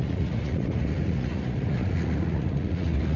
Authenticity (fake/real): fake